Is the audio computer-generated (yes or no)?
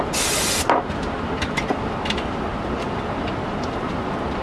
no